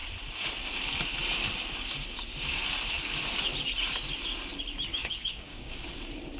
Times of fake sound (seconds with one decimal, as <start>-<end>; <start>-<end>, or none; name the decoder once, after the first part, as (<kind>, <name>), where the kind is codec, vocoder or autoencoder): 5.0-6.0 (codec, DAC)

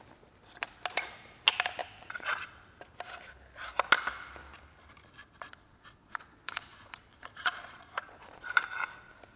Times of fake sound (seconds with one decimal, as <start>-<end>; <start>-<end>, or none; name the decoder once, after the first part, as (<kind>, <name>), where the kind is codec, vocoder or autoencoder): 1.8-2.6 (vocoder, Vocos); 5.2-8.6

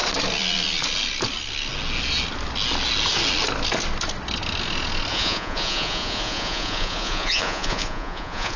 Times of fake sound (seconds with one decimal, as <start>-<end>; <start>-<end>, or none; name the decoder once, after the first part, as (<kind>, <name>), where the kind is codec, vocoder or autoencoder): 5.1-8.6 (vocoder, Vocos)